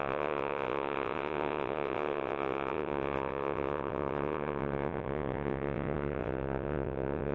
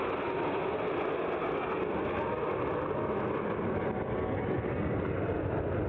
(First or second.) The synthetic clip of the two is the first